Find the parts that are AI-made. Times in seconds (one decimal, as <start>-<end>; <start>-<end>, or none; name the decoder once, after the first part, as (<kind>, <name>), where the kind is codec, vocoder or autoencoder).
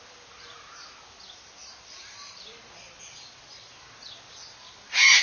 1.6-3.7 (vocoder, BigVGAN v2)